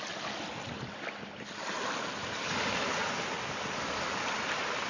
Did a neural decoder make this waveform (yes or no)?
no